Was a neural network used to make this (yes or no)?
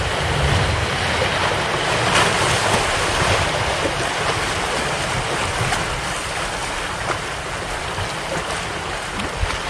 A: no